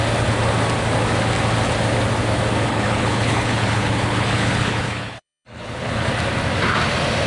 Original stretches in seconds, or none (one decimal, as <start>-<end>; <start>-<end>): 0.0-2.7; 6.1-7.3